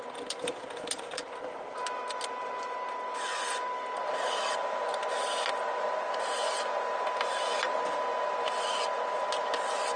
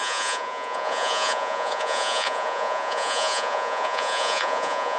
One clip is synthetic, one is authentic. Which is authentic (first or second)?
first